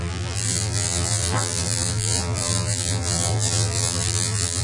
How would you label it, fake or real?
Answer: fake